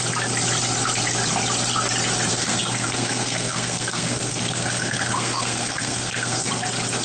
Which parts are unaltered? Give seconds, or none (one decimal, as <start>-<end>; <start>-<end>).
0.0-2.3; 6.5-7.0